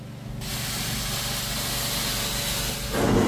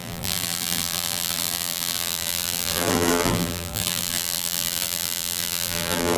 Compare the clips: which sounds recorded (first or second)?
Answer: first